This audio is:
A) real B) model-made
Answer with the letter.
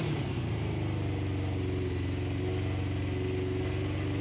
A